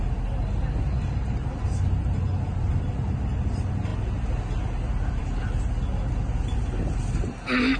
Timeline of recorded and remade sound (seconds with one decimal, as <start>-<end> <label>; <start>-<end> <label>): 0.0-7.8 recorded